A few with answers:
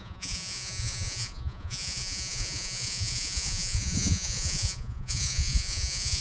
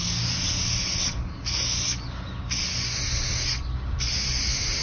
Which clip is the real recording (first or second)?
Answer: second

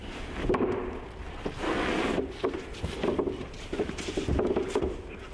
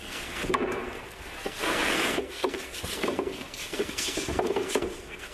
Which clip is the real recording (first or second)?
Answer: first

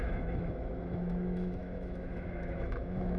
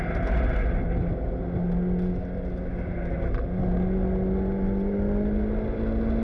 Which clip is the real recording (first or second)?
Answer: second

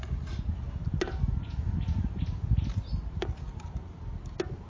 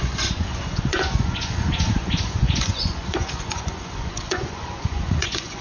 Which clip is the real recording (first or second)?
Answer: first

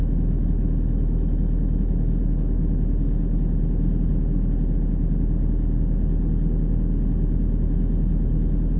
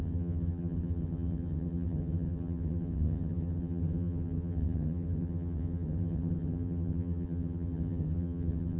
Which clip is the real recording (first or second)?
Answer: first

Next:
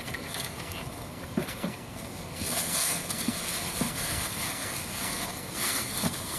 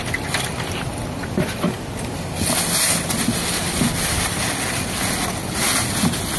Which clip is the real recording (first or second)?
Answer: second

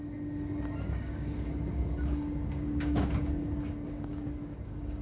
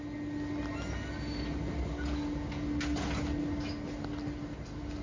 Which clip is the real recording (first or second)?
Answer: second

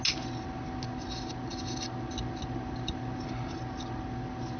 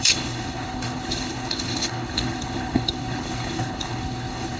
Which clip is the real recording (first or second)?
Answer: first